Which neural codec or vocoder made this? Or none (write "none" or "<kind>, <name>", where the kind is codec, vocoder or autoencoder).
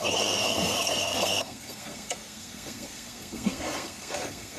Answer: codec, SNAC